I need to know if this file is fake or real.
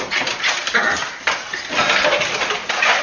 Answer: real